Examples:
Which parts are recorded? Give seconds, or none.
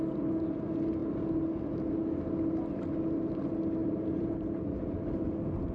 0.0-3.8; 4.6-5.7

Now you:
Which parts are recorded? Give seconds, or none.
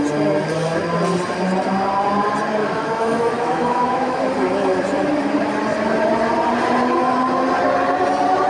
0.0-2.6; 4.2-8.5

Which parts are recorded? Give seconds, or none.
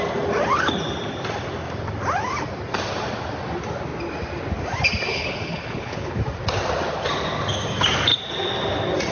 0.0-5.1; 6.2-9.1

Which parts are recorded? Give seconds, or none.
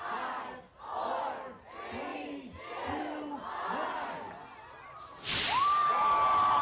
0.0-2.1; 5.9-6.6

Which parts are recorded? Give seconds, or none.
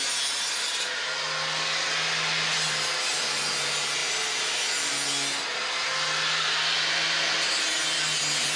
0.0-4.0; 4.9-8.6